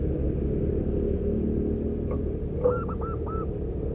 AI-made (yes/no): no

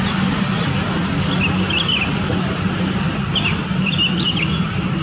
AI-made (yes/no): no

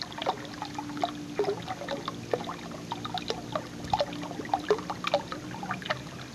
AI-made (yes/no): no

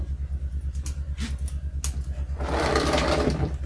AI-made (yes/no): no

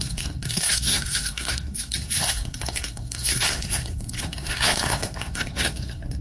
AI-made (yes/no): yes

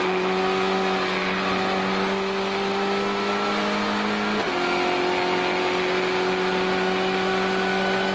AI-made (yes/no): no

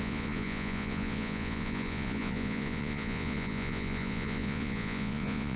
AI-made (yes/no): yes